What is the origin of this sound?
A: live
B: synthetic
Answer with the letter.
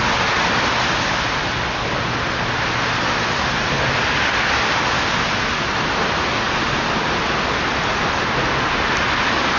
A